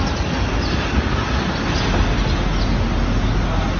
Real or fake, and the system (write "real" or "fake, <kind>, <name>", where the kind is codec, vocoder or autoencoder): real